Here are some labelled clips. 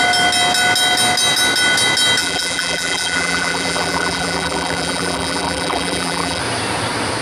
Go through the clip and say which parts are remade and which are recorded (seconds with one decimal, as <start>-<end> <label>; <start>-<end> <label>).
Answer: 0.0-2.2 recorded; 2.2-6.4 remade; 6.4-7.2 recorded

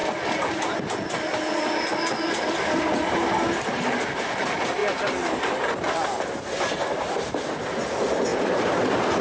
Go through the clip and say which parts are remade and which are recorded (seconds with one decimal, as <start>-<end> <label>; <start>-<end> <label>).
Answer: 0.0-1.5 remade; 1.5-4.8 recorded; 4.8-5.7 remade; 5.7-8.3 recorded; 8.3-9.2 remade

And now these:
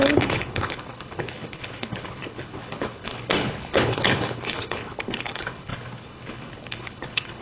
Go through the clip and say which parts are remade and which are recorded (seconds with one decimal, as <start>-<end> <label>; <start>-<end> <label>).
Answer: 0.0-7.4 remade